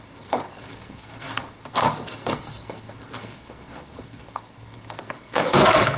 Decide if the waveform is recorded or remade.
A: remade